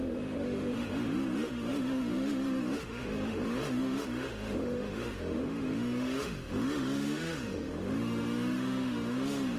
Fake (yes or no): yes